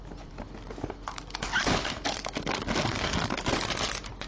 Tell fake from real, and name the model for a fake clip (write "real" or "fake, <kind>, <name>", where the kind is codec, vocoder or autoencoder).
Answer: real